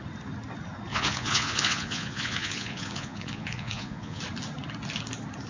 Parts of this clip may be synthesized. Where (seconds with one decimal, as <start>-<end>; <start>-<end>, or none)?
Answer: 0.9-4.2